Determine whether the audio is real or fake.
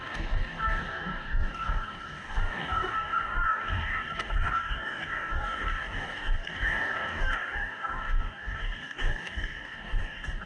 fake